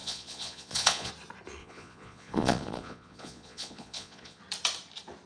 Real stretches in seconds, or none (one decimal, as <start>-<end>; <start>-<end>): 1.1-1.6; 4.4-5.3